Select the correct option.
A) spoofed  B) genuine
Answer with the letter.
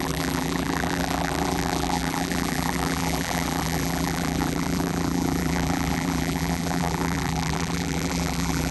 A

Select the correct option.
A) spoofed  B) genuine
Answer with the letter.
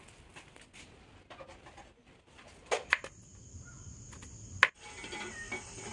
B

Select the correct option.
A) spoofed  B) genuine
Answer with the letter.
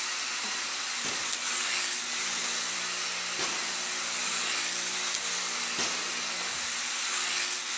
B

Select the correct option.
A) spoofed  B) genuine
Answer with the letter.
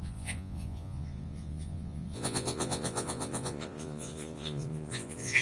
A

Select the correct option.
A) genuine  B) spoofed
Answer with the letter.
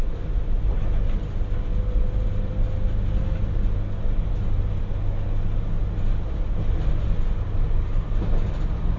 A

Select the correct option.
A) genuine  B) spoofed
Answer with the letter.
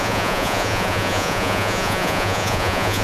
B